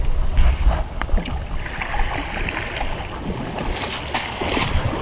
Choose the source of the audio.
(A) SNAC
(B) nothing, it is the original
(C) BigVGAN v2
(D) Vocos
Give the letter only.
B